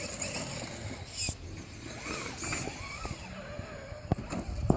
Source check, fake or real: real